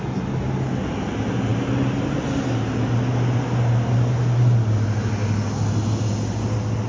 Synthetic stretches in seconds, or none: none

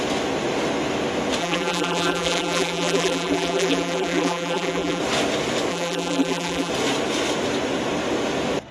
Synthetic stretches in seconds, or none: 1.4-5.0 (vocoder, BigVGAN v2); 5.7-6.7

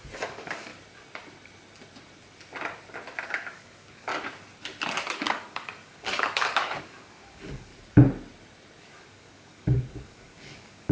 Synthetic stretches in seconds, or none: 0.0-0.7 (codec, DAC); 3.2-4.1; 5.1-7.7; 8.8-10.9

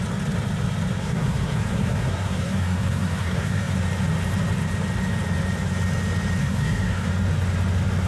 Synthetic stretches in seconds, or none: 1.0-3.8 (codec, SNAC); 6.4-7.1